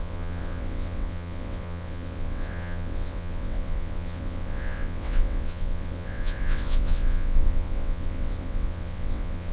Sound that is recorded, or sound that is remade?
remade